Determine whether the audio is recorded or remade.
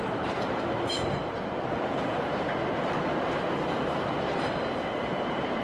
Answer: remade